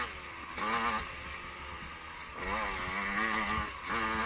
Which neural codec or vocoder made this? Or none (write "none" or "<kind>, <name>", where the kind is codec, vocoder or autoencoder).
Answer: none